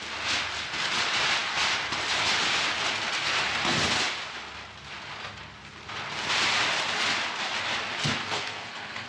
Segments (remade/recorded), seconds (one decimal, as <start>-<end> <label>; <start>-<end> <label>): 0.0-8.2 recorded; 8.2-9.1 remade